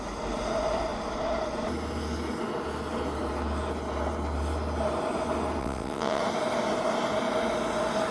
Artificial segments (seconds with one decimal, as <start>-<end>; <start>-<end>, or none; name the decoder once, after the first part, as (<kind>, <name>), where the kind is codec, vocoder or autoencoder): 5.6-6.2 (vocoder, WaveNeXt)